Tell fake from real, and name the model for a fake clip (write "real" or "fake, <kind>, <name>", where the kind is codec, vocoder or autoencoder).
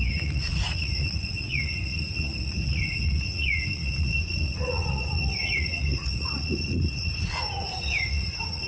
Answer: fake, vocoder, Vocos